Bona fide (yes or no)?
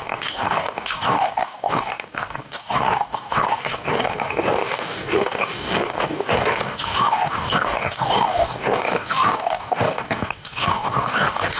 no